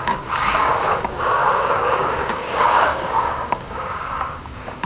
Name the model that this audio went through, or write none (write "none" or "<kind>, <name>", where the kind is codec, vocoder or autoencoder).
codec, DAC